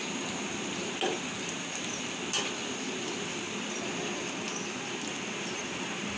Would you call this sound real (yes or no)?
yes